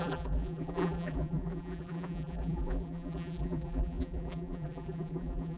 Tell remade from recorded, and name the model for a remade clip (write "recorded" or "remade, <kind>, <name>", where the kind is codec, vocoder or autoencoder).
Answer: remade, vocoder, BigVGAN v2